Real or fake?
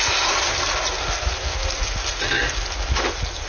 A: real